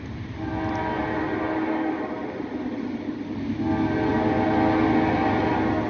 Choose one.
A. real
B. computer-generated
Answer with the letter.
A